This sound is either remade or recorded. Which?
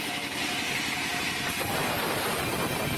recorded